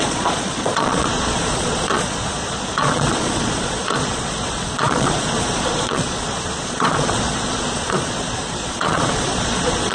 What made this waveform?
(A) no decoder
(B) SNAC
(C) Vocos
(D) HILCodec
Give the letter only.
C